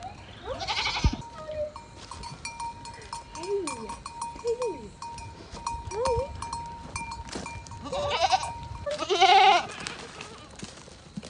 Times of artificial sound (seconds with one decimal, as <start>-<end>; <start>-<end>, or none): none